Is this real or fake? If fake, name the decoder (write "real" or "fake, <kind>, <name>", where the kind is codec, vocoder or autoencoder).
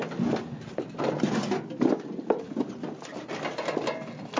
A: real